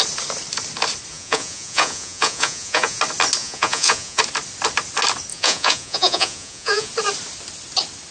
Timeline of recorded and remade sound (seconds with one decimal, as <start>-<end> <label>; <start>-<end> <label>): 0.0-1.1 recorded; 1.1-3.0 remade; 3.0-3.4 recorded; 3.4-4.2 remade; 4.2-5.3 recorded; 5.3-6.9 remade; 6.9-8.1 recorded